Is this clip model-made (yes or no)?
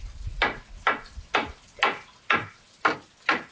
no